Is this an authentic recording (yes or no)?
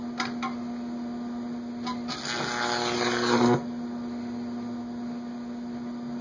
yes